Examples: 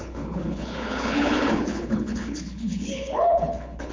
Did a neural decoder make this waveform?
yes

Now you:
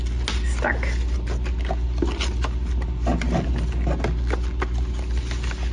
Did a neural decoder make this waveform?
no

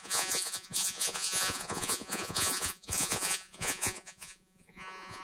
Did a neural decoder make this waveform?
yes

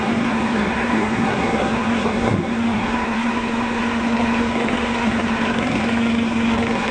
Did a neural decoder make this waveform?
yes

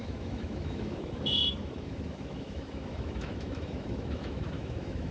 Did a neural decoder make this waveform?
yes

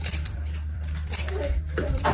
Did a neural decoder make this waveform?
yes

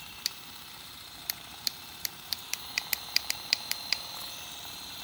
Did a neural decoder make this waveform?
yes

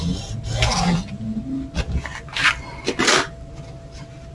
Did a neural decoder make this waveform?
no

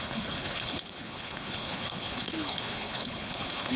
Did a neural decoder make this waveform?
yes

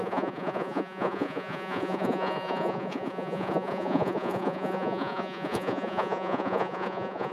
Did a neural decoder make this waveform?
yes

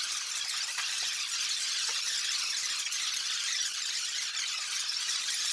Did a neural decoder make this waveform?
yes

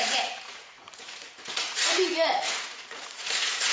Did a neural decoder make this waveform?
yes